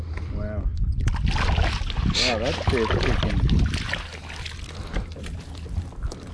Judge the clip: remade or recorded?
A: recorded